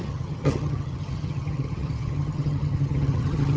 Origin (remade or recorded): remade